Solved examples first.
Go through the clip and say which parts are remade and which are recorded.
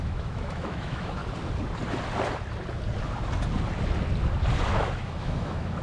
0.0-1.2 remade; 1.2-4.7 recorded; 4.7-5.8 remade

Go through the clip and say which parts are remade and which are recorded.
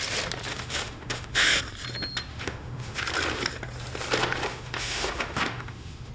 0.0-0.5 recorded; 0.5-1.6 remade; 1.6-2.3 recorded; 2.3-3.0 remade; 3.0-4.5 recorded; 4.5-6.1 remade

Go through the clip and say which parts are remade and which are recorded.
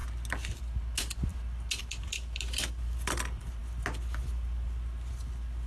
0.0-5.7 recorded